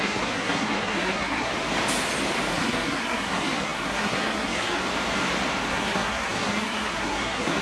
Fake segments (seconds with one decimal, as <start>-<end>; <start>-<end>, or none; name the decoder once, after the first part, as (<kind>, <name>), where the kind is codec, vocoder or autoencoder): 0.0-1.5 (codec, SNAC); 2.5-4.8; 5.7-7.6